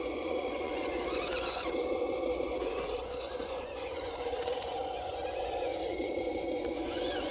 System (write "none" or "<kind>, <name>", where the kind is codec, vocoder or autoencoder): vocoder, Vocos